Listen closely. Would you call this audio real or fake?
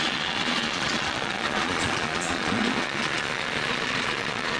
fake